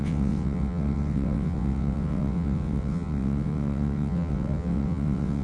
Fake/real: fake